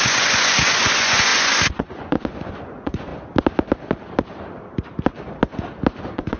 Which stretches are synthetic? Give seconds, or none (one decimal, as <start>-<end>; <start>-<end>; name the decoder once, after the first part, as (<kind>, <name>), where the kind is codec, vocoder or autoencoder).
0.0-3.1 (vocoder, Vocos); 6.0-6.4